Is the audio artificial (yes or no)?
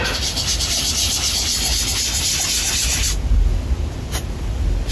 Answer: no